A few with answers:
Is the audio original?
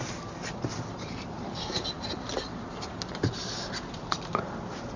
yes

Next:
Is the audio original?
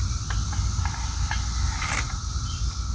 yes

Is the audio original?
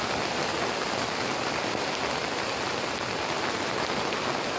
yes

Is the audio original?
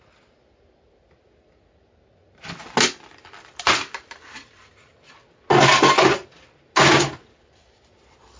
yes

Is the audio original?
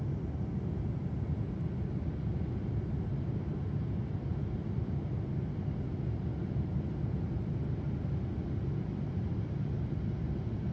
yes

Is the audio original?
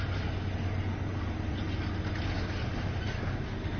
yes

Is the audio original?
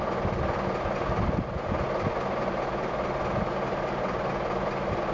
yes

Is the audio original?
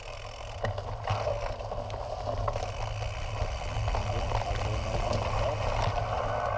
yes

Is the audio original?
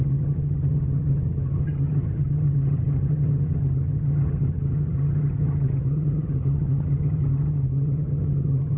no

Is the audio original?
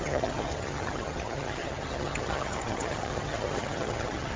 no